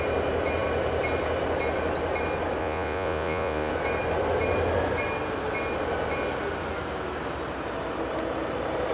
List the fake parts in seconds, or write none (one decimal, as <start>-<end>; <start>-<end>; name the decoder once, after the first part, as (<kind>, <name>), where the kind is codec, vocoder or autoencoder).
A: 2.6-3.7 (vocoder, Vocos)